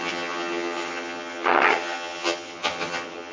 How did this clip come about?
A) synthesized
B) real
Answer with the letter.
A